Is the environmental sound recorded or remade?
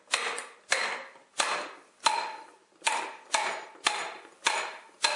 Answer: recorded